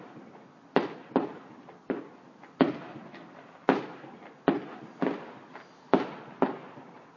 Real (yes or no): yes